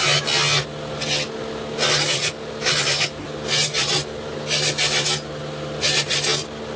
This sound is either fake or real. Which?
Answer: real